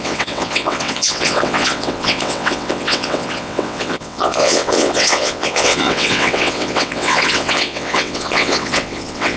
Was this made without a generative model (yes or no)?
no